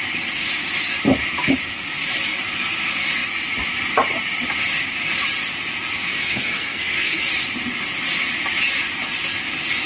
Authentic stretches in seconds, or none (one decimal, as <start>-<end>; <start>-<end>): 0.0-6.1; 7.2-9.9